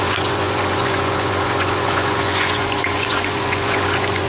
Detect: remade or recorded remade